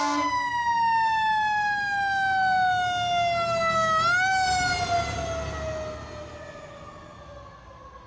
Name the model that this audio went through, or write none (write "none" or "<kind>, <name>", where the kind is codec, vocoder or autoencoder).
none